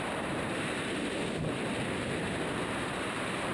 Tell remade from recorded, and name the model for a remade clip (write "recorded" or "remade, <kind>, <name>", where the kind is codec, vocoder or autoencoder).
remade, vocoder, BigVGAN v2